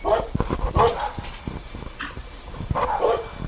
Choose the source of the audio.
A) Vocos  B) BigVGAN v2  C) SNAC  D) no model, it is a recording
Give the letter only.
D